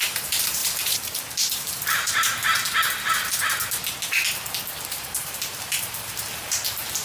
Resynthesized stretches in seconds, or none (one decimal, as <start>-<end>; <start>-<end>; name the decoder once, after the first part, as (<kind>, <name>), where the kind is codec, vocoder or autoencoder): 0.0-2.4 (vocoder, BigVGAN v2); 4.8-7.0